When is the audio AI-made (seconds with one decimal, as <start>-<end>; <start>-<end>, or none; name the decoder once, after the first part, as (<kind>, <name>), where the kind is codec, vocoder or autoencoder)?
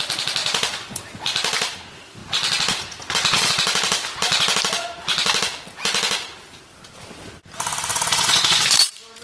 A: 0.4-1.0 (vocoder, Vocos); 7.9-8.7